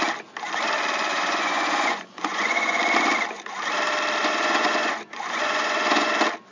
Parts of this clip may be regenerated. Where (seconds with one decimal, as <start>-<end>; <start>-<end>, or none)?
1.1-2.8; 4.2-6.1